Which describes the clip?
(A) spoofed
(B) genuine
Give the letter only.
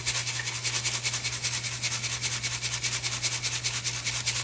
B